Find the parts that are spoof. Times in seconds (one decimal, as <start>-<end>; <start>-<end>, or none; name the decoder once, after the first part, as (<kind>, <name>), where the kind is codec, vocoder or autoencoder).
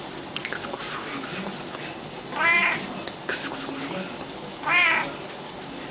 none